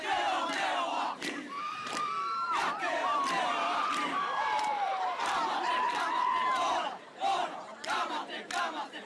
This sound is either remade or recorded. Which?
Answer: remade